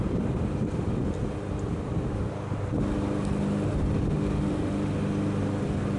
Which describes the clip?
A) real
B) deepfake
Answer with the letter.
A